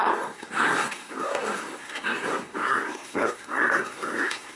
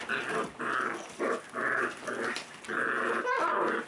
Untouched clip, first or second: second